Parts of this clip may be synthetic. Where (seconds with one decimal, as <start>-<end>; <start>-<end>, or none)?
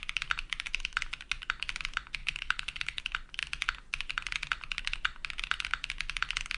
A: 2.2-3.0